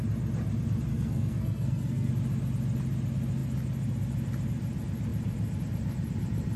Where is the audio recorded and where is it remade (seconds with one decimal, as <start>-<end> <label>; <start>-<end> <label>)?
0.0-0.9 recorded; 0.9-2.1 remade; 2.1-6.6 recorded

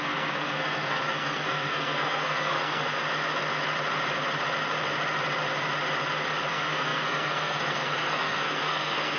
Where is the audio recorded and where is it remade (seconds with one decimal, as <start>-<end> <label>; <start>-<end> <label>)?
0.0-3.0 remade; 3.0-6.5 recorded; 6.5-9.2 remade

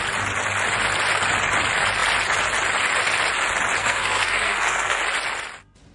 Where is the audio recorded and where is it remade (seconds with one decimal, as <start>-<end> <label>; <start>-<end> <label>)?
0.0-3.8 recorded; 3.8-5.0 remade; 5.0-5.9 recorded

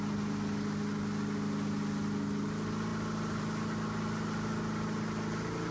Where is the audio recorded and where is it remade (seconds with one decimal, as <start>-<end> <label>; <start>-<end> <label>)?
0.0-5.7 recorded

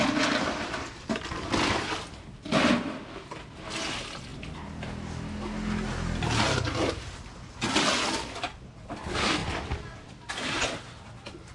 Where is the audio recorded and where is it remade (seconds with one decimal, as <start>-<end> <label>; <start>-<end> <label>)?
0.0-11.5 recorded